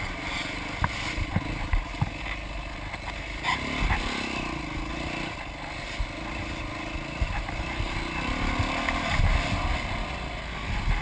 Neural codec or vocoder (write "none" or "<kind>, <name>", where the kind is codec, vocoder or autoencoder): none